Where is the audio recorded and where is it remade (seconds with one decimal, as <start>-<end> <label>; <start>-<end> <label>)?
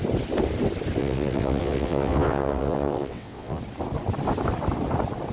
0.0-1.0 recorded; 1.0-3.6 remade; 3.6-5.3 recorded